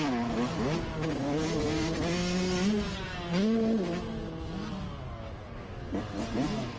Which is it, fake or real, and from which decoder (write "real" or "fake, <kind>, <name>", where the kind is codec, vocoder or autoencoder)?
real